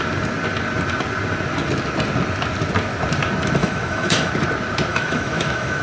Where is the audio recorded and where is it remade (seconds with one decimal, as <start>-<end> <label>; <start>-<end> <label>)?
0.0-3.6 recorded; 3.6-4.3 remade; 4.3-4.9 recorded; 4.9-5.8 remade